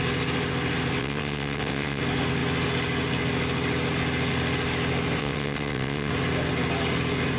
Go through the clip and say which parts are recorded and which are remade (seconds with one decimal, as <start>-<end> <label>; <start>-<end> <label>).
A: 0.0-1.0 recorded; 1.0-2.0 remade; 2.0-5.2 recorded; 5.2-6.1 remade; 6.1-7.4 recorded